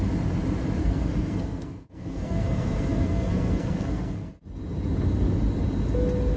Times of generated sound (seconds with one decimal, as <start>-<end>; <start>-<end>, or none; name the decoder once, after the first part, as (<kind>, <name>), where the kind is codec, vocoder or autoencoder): 0.8-4.3 (codec, SNAC)